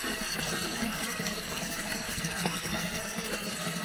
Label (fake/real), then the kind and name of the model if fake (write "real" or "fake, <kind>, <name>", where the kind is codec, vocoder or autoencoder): fake, codec, SNAC